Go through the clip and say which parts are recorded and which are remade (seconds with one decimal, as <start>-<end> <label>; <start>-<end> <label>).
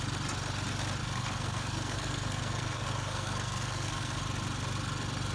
0.0-1.0 recorded; 1.0-4.2 remade; 4.2-5.3 recorded